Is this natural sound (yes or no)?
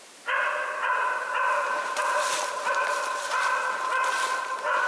yes